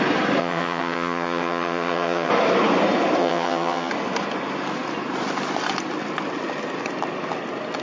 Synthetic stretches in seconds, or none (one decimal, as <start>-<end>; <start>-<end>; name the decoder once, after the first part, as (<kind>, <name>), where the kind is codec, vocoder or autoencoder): 0.4-2.3 (vocoder, HiFi-GAN); 3.2-3.9